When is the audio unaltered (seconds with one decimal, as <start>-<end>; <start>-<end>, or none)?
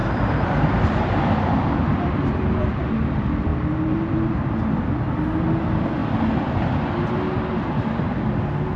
1.7-3.5; 4.7-8.8